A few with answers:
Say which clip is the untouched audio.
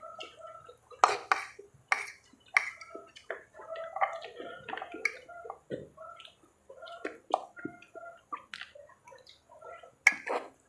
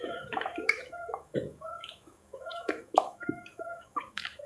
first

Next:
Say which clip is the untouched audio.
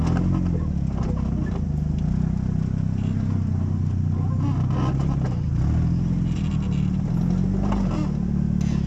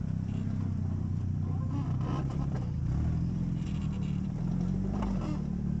first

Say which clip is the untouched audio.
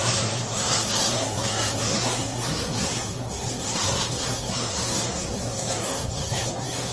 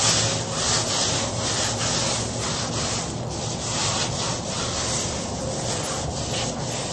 second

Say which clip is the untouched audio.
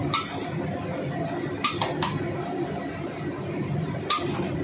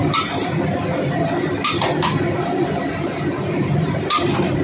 first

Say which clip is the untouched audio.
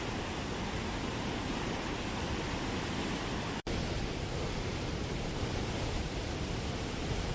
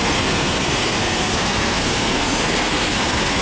first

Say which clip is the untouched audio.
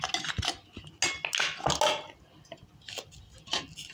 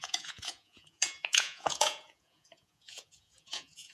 first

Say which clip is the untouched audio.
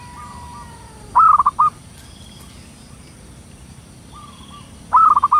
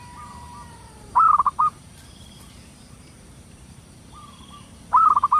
first